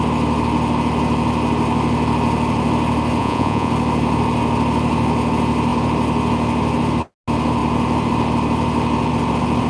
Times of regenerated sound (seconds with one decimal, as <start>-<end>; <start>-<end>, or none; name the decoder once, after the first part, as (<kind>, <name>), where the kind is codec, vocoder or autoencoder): 3.2-3.7 (vocoder, Vocos)